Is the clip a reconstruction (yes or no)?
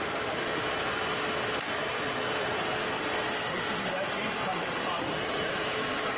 yes